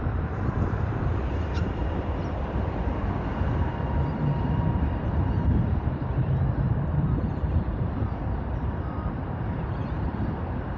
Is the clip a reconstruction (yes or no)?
yes